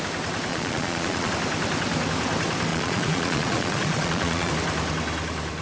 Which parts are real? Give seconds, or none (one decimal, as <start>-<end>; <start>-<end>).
0.0-0.5; 1.3-2.7; 4.5-5.6